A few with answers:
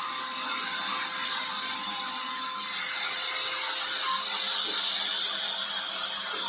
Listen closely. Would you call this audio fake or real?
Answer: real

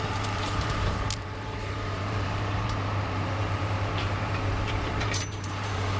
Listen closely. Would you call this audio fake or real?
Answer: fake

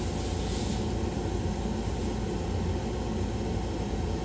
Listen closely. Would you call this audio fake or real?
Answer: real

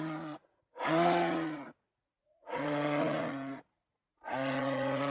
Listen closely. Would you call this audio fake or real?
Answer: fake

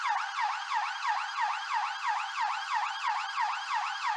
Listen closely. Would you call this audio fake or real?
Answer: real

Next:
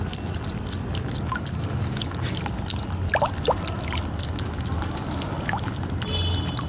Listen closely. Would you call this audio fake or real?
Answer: real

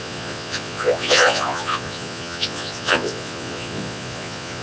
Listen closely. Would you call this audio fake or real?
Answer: fake